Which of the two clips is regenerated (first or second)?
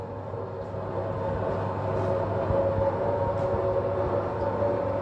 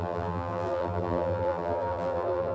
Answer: second